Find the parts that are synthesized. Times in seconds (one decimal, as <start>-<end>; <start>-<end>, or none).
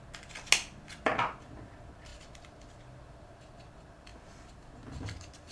none